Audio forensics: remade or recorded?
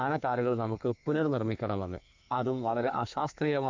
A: remade